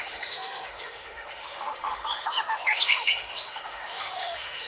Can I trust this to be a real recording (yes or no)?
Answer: no